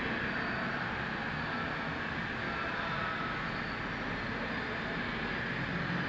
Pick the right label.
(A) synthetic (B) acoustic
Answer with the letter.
B